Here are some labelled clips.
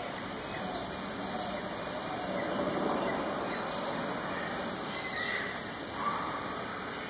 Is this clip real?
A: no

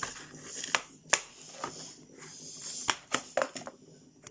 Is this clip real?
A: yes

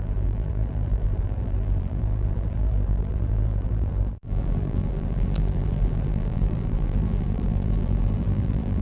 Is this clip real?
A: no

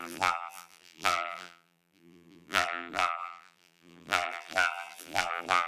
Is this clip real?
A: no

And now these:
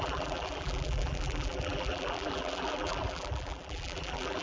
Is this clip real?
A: no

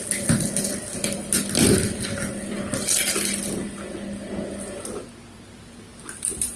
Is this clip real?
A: yes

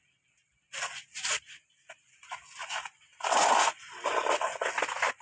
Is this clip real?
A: yes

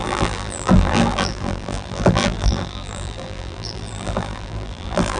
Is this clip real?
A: no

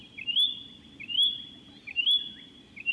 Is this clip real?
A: no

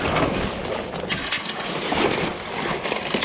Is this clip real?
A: yes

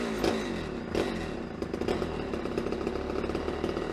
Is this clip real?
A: yes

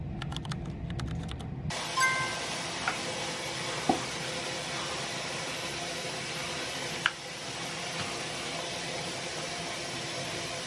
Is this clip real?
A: yes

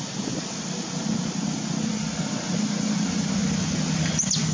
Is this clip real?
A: yes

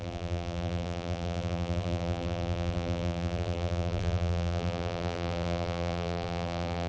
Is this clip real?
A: no